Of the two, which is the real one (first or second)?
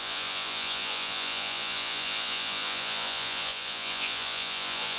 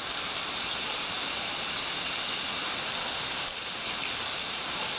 second